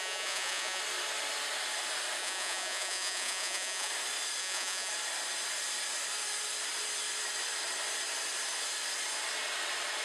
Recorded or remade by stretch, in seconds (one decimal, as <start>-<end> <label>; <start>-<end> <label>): 0.0-0.8 remade; 0.8-2.2 recorded; 2.2-3.9 remade; 3.9-4.4 recorded; 4.4-4.9 remade; 4.9-10.0 recorded